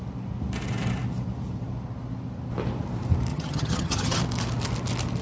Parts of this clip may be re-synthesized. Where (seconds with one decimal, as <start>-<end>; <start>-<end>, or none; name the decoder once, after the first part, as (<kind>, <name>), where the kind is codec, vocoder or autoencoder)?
3.3-4.2 (vocoder, HiFi-GAN)

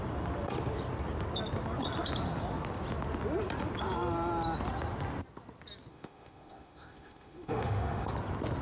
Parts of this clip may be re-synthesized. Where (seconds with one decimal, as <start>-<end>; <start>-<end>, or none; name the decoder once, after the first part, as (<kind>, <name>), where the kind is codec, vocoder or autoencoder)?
5.9-8.1 (autoencoder, DAC-VAE)

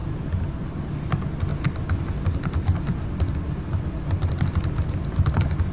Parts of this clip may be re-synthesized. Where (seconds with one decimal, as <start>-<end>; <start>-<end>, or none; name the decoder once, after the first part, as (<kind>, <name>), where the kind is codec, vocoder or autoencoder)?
none

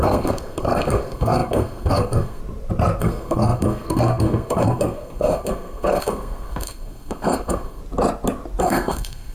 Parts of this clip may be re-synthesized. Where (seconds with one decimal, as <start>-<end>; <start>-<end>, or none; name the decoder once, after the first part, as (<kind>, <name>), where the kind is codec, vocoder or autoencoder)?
0.0-2.4 (codec, SNAC); 3.0-7.8; 8.6-9.3

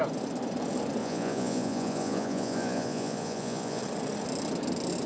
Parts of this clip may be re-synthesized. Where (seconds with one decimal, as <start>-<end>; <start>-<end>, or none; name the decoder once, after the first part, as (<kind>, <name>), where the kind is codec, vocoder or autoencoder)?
1.0-3.8 (vocoder, Vocos)

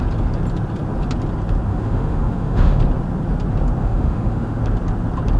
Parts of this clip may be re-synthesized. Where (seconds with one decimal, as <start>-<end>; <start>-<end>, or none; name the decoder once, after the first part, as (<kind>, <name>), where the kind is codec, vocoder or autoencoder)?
1.7-2.8 (autoencoder, DAC-VAE); 3.8-4.6

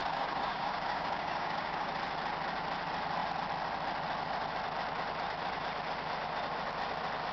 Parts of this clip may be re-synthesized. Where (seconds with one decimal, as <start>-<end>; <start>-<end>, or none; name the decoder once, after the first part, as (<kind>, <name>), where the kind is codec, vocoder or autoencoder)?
0.0-1.9 (codec, DAC)